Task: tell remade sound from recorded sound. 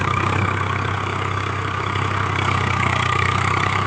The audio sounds remade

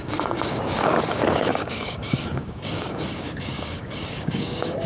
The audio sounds remade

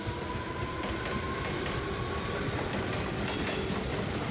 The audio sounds recorded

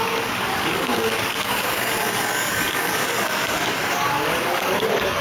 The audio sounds remade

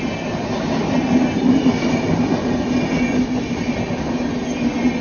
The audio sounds recorded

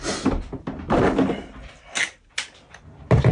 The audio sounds recorded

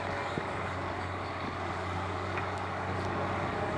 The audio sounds remade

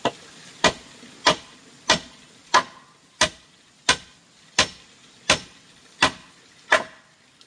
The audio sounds recorded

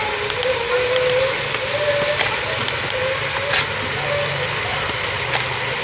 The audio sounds recorded